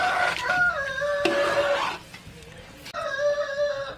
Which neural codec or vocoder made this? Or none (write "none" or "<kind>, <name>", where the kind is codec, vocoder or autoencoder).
none